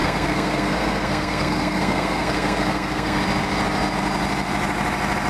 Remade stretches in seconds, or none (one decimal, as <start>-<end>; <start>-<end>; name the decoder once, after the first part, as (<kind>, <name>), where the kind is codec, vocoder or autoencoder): 0.0-3.2 (codec, SNAC)

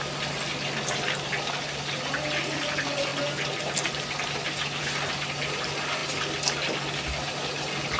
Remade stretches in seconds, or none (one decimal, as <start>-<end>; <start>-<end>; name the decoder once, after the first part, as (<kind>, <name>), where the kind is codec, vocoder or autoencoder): none